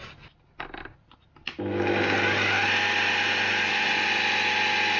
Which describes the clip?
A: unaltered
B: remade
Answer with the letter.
A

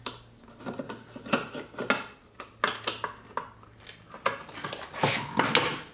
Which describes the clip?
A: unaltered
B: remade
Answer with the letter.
A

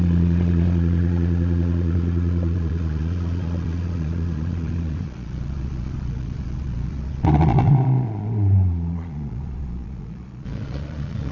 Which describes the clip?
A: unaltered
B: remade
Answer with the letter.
B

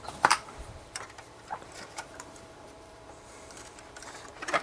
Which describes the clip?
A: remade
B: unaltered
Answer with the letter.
A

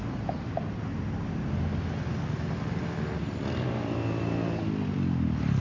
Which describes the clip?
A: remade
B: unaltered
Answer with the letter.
B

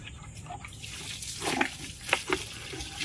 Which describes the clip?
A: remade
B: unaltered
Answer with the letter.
B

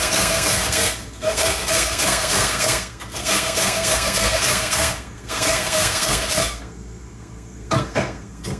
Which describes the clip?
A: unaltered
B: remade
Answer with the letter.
B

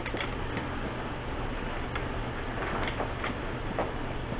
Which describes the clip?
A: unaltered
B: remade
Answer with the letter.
B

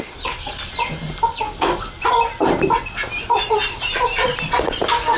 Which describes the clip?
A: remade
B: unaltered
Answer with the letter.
B